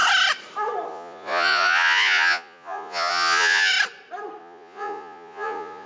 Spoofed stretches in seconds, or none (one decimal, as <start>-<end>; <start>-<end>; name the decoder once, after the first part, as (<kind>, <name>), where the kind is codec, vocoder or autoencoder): 0.9-3.7 (vocoder, Vocos); 4.4-5.9